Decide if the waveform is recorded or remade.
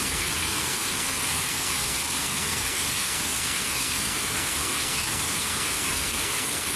remade